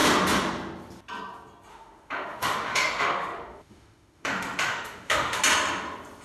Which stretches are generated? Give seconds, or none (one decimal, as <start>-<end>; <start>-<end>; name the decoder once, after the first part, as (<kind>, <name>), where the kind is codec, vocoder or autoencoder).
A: 1.7-5.4 (autoencoder, DAC-VAE)